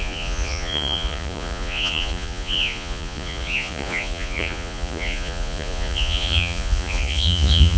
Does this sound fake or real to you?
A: fake